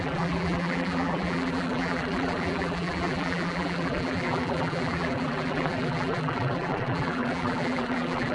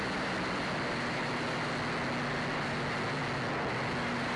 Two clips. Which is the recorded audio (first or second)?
second